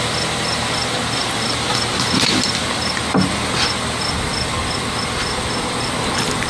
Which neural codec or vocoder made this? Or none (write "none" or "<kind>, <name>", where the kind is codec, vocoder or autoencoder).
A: none